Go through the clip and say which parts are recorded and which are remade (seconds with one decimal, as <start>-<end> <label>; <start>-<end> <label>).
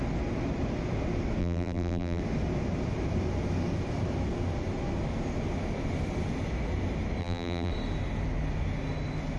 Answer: 0.0-1.4 recorded; 1.4-2.2 remade; 2.2-7.2 recorded; 7.2-7.7 remade; 7.7-9.4 recorded